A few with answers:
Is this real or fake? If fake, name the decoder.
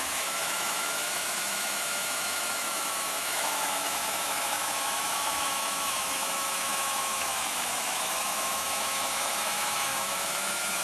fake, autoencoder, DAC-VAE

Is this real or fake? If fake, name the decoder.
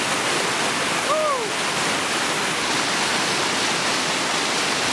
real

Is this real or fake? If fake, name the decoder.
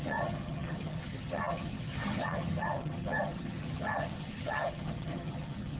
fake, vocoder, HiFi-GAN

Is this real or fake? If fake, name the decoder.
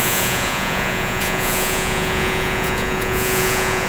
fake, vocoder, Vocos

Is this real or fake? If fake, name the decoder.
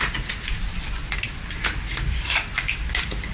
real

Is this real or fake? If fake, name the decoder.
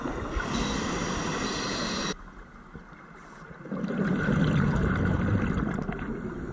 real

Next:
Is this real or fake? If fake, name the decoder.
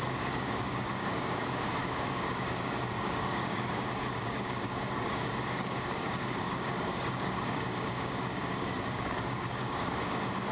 fake, codec, DAC